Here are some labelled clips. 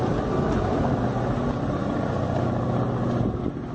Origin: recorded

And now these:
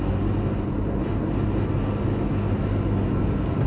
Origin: recorded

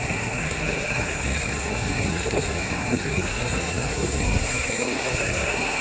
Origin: remade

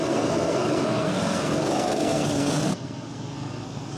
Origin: remade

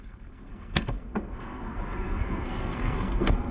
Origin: remade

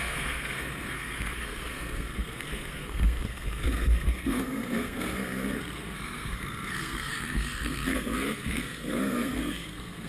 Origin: remade